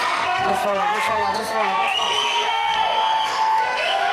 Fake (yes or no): yes